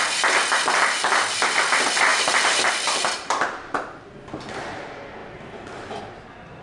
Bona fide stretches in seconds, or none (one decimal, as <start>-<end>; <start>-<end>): 0.0-2.1; 3.5-5.2; 6.0-6.6